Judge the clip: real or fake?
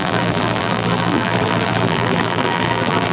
fake